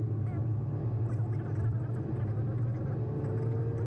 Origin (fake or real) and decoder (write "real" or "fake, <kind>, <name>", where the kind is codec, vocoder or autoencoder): real